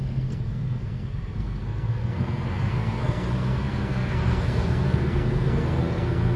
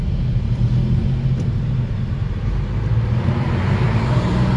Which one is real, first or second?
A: second